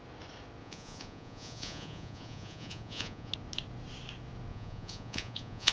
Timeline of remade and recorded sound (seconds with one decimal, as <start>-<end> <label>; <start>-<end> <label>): 0.0-0.6 recorded; 0.6-3.3 remade; 3.3-4.5 recorded; 4.5-5.7 remade